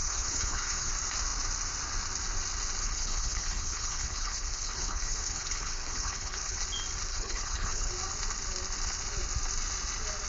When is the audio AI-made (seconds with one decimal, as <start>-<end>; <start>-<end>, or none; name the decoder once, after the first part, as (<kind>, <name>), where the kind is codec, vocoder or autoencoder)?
0.0-0.9 (codec, HILCodec); 2.8-6.6; 7.1-7.9